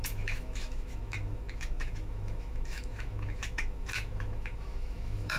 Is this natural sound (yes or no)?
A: no